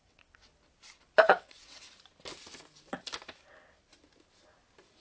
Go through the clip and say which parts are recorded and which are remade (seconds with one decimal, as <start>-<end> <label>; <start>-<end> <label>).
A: 0.0-0.5 remade; 0.5-1.2 recorded; 1.2-1.8 remade; 1.8-5.0 recorded